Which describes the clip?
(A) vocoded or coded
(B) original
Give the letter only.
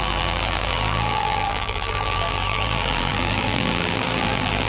A